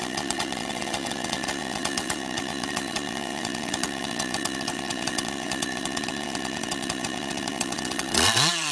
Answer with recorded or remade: remade